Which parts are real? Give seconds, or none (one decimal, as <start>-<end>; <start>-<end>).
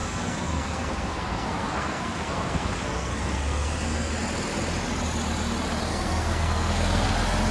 4.1-5.9; 7.1-7.5